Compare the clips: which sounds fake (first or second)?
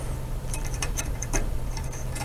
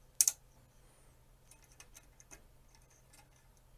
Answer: first